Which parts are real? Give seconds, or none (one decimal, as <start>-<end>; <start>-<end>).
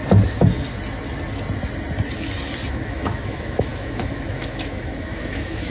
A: 0.0-2.7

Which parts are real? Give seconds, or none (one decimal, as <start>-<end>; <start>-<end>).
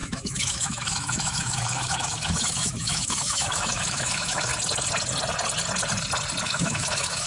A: 4.5-6.4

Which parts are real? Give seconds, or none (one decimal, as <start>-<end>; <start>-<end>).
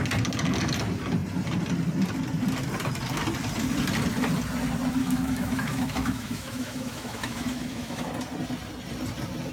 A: 0.0-5.0; 8.1-9.5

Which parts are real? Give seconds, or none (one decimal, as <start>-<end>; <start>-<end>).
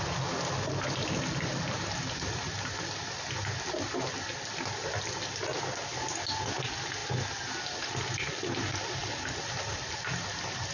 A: 0.0-10.7